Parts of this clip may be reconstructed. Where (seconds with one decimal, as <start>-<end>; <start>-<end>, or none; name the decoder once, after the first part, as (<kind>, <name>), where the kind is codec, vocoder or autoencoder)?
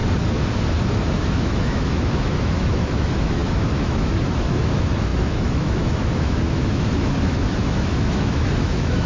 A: 1.0-9.1 (autoencoder, DAC-VAE)